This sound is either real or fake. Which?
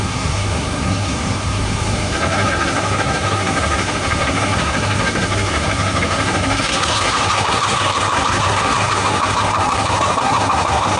fake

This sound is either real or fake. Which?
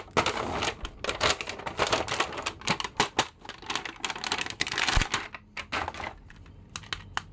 real